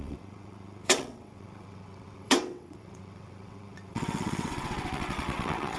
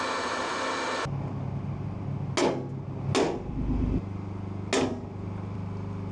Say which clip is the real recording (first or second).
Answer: second